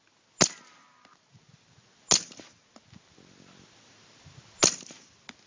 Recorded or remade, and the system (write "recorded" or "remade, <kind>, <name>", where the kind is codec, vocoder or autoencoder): recorded